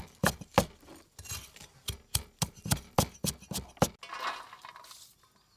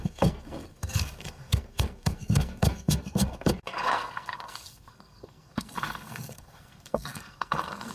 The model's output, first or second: second